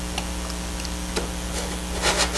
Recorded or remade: recorded